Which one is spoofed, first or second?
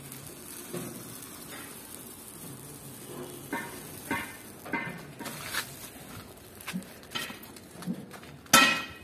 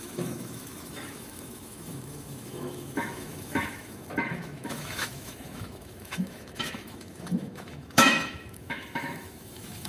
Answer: second